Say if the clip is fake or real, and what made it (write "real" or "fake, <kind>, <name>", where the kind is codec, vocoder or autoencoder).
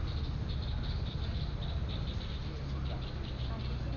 real